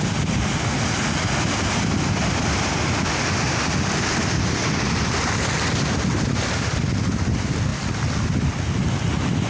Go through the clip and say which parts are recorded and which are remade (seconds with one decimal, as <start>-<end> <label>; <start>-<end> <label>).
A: 0.0-9.5 recorded